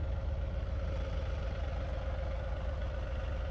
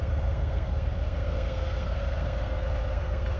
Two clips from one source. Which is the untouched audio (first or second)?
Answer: first